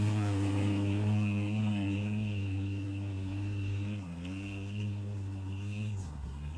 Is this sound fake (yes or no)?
yes